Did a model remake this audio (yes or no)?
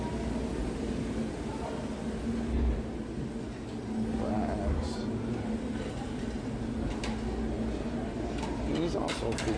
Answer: no